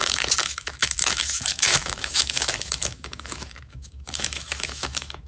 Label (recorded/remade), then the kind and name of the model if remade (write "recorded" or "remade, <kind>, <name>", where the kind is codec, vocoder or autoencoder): remade, autoencoder, DAC-VAE